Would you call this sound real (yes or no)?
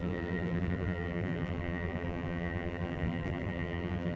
no